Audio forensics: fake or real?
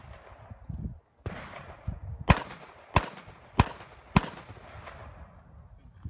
real